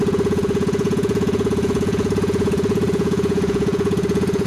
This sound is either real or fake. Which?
fake